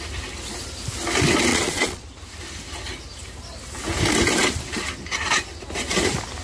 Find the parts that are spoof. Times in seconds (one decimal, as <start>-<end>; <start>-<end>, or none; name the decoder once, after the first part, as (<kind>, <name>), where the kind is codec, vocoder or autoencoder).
1.5-2.1 (vocoder, Vocos)